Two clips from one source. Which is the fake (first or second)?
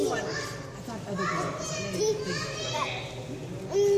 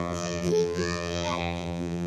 second